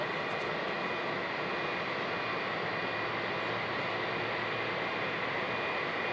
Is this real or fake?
real